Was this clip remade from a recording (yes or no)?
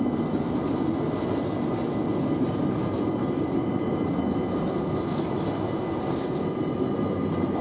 no